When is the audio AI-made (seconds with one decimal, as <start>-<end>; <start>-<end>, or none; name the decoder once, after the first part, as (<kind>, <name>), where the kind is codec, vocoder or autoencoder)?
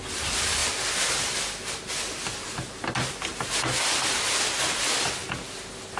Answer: none